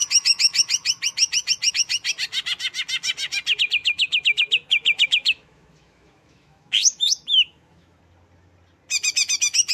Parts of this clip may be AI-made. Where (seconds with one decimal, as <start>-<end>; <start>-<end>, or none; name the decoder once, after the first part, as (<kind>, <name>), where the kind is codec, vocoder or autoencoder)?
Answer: 3.8-8.0 (autoencoder, DAC-VAE)